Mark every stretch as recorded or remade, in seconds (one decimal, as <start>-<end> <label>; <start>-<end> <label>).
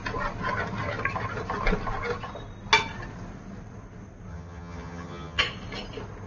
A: 0.0-4.3 recorded; 4.3-5.4 remade; 5.4-6.3 recorded